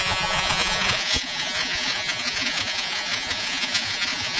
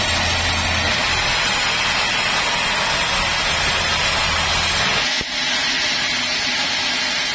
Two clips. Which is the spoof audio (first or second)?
first